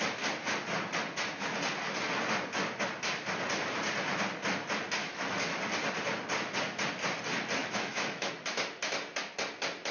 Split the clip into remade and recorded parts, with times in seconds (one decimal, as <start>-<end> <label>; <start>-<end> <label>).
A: 0.0-5.0 recorded; 5.0-5.6 remade; 5.6-7.6 recorded; 7.6-8.3 remade; 8.3-9.9 recorded